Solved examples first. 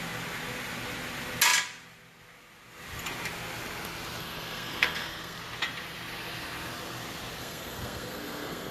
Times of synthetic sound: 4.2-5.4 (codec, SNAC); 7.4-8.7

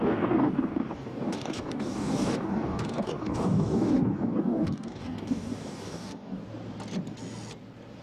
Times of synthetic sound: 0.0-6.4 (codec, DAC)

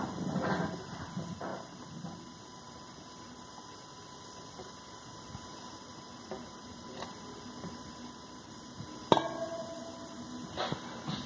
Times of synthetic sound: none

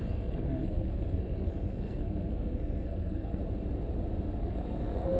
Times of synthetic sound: 0.0-3.4 (codec, SNAC); 4.4-5.2

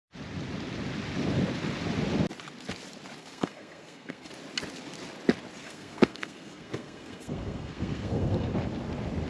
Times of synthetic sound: 3.2-4.3 (codec, SNAC); 5.6-8.5

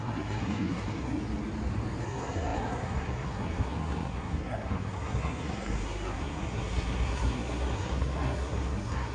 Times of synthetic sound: 0.0-1.2 (codec, SNAC); 2.0-9.1